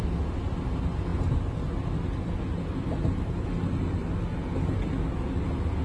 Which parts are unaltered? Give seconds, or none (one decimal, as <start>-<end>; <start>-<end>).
0.0-5.8